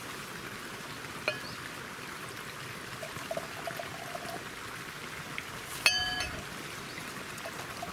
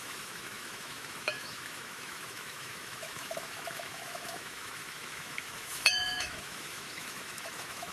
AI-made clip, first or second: second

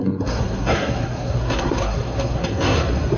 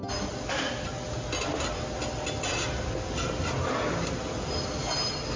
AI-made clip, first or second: first